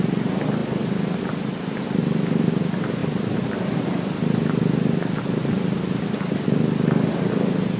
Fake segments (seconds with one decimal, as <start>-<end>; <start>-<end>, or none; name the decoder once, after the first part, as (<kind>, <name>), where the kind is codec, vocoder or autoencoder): none